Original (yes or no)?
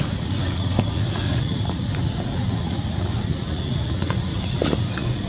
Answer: no